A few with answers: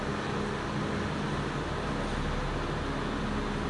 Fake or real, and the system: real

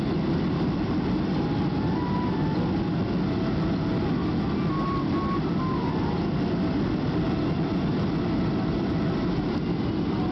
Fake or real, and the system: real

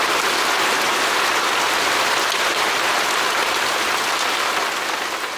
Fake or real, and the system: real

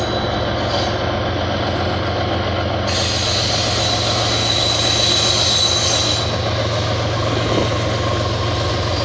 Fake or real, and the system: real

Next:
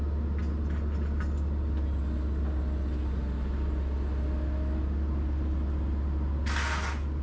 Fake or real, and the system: real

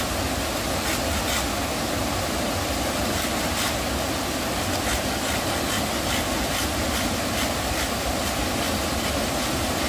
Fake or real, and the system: real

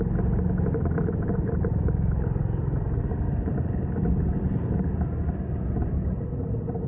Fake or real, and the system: real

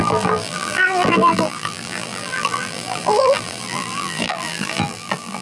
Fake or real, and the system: fake, vocoder, BigVGAN v2